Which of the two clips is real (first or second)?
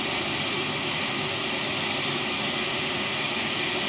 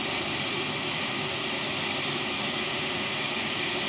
first